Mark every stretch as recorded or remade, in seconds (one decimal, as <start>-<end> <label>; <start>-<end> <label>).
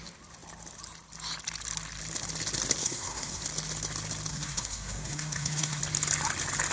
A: 0.0-2.8 recorded; 2.8-3.4 remade; 3.4-4.3 recorded; 4.3-5.8 remade; 5.8-6.7 recorded